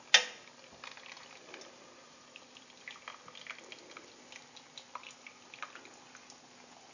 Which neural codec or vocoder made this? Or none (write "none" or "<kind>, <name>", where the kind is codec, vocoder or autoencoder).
none